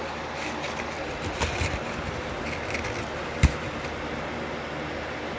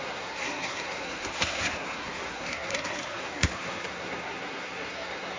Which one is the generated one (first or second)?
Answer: second